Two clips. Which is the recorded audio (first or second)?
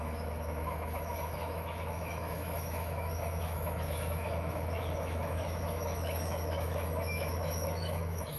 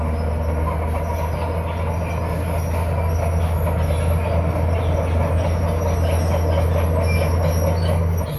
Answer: second